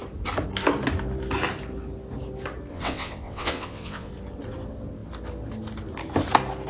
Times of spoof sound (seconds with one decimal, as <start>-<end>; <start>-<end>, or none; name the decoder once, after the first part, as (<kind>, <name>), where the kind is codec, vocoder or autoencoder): 2.7-4.1 (vocoder, WaveNeXt)